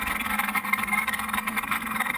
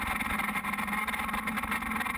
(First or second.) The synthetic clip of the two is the first